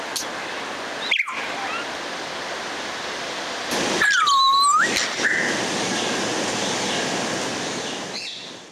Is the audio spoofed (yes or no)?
no